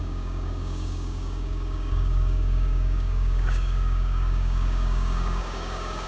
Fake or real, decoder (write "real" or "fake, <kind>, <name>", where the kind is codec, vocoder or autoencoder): fake, codec, DAC